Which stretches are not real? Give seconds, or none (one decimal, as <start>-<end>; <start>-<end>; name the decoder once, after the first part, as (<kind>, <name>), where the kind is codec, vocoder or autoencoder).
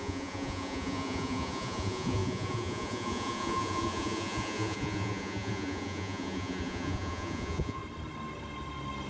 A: 0.0-7.8 (vocoder, Vocos)